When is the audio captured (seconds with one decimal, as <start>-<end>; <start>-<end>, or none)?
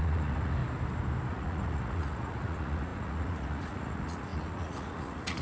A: 0.6-1.3